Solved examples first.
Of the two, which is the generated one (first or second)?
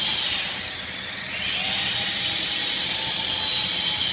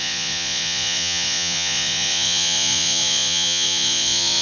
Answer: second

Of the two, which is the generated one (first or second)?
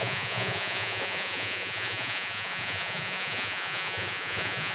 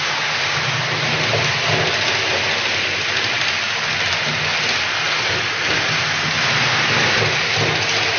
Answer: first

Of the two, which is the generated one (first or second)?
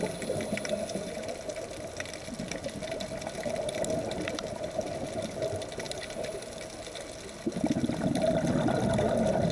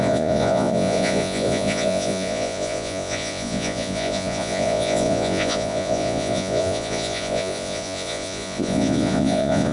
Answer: second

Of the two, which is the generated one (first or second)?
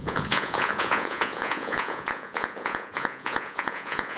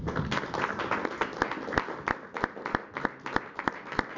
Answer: first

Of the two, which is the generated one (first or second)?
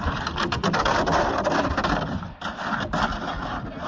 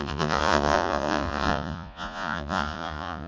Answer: second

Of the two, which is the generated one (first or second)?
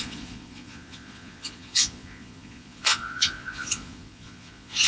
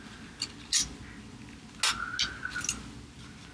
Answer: first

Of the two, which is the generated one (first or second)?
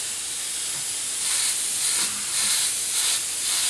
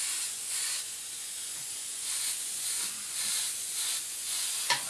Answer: second